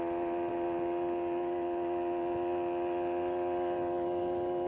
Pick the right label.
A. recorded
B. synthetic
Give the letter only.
A